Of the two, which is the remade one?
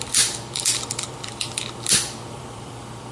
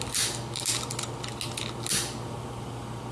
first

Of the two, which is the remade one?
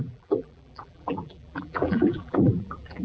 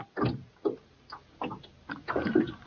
first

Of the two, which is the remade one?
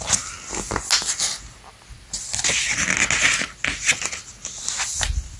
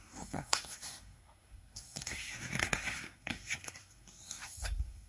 second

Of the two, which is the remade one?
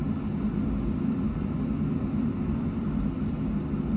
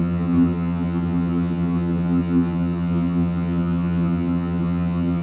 second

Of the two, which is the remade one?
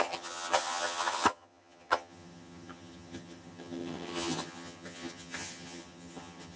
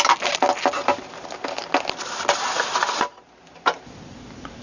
first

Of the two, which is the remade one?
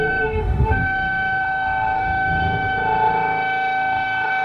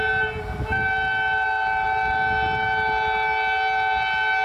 first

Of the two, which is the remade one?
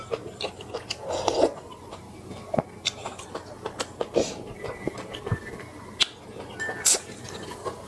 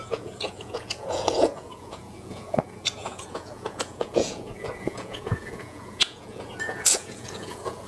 second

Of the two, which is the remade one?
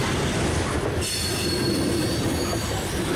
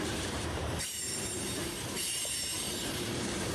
second